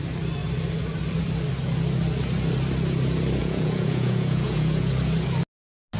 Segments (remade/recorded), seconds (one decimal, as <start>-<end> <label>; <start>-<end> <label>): 0.0-3.4 recorded; 3.4-4.9 remade; 4.9-6.0 recorded